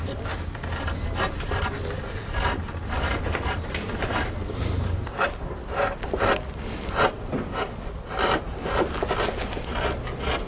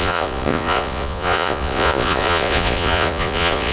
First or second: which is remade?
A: second